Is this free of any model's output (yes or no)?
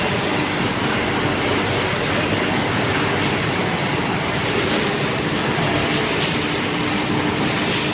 yes